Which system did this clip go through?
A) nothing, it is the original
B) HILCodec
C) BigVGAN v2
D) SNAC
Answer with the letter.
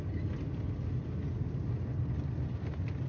A